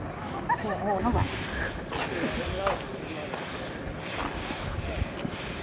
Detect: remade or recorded recorded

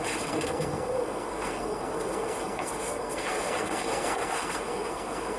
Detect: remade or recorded remade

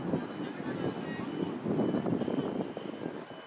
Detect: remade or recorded recorded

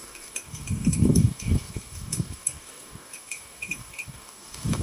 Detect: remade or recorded remade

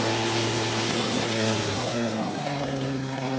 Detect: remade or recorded remade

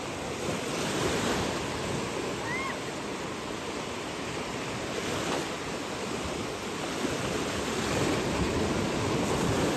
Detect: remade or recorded recorded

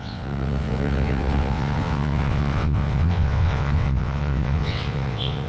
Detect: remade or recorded remade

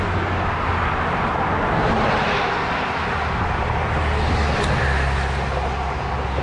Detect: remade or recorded recorded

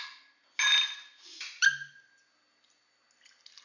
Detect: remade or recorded recorded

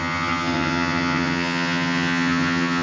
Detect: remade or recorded remade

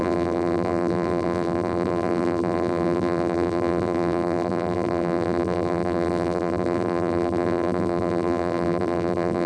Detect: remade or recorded remade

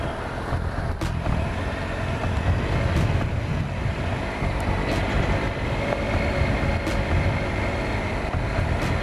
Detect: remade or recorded recorded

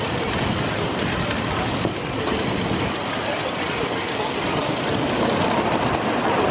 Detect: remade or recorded recorded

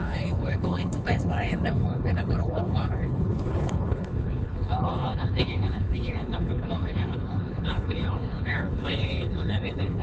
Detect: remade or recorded remade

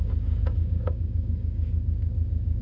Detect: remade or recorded remade